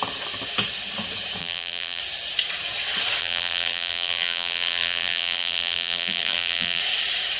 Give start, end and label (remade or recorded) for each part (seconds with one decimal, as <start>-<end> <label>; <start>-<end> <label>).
0.0-1.4 recorded; 1.4-2.0 remade; 2.0-3.2 recorded; 3.2-6.8 remade; 6.8-7.4 recorded